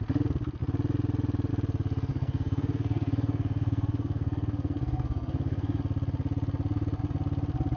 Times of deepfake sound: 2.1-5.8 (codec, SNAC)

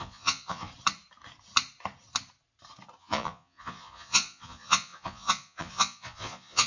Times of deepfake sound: 0.0-0.7 (vocoder, Vocos); 3.0-6.7

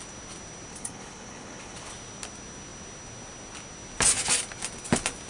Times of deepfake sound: 0.7-1.9 (codec, HILCodec)

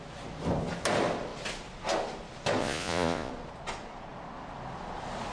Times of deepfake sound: 2.6-3.3 (vocoder, Vocos)

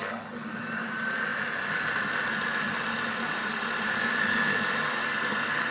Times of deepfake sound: 5.1-5.7 (codec, SNAC)

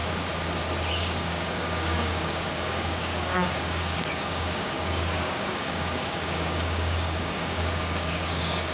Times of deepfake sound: 0.9-8.7 (codec, DAC)

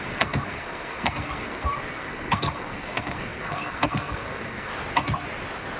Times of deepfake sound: 0.0-4.7 (codec, SNAC)